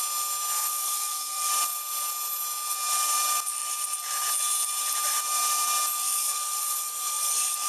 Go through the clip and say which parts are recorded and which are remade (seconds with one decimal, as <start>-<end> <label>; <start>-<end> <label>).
0.0-0.7 recorded; 0.7-1.5 remade; 1.5-6.0 recorded; 6.0-7.7 remade